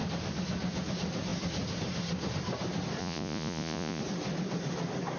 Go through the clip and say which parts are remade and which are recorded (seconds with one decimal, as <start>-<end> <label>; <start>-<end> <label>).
0.0-3.0 recorded; 3.0-4.0 remade; 4.0-5.2 recorded